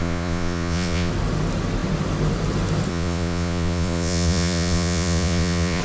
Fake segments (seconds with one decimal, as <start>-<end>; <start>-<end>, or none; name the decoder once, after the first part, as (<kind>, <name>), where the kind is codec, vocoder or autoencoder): 0.0-1.1 (vocoder, Vocos); 2.9-5.8